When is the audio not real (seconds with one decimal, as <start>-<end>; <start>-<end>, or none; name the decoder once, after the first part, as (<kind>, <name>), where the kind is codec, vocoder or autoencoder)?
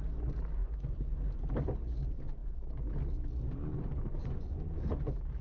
0.6-1.4 (vocoder, Vocos); 4.2-4.9